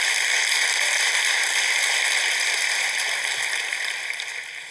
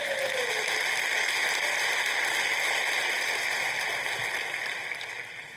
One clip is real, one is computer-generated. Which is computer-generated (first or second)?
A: first